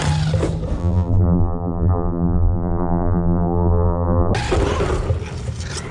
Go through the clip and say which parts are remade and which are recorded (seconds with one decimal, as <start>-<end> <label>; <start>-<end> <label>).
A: 0.0-0.8 recorded; 0.8-4.3 remade; 4.3-5.9 recorded